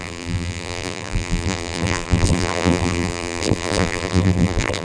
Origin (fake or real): fake